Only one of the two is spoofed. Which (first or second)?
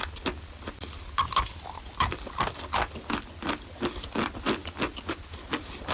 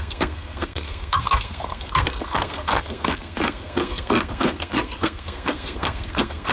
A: second